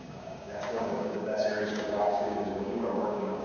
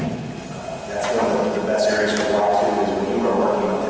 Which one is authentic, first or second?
second